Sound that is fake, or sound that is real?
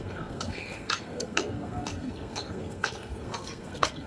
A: fake